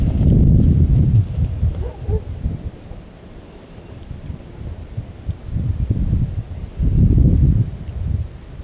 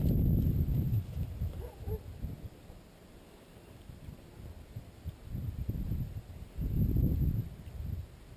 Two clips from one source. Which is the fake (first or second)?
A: first